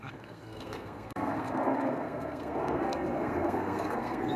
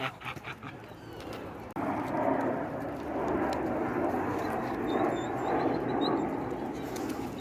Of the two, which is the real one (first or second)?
second